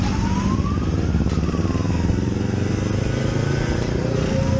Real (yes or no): yes